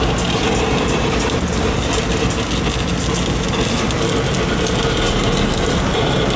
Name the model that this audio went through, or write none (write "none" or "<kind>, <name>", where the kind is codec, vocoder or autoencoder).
none